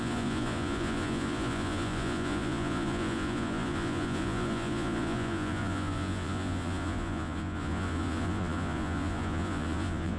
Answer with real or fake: fake